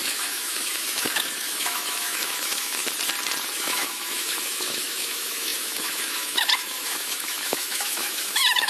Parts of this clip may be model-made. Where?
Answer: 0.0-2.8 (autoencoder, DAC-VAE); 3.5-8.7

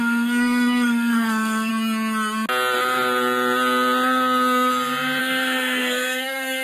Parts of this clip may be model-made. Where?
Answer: 0.0-1.7 (codec, SNAC); 5.2-6.6

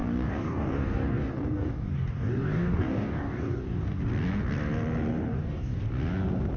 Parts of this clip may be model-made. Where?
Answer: 0.0-4.0 (codec, DAC); 5.3-5.8

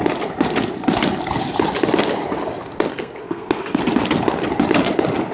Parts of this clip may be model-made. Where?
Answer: 2.9-3.8 (codec, SNAC)

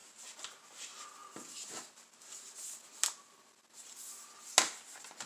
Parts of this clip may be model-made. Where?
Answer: none

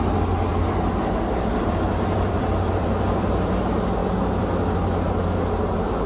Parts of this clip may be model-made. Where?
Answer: 0.5-3.6 (vocoder, BigVGAN v2)